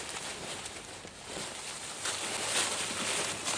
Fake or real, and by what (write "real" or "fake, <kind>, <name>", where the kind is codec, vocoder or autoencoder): real